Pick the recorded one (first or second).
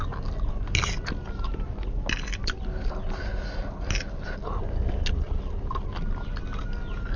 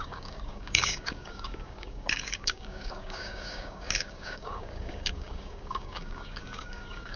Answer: first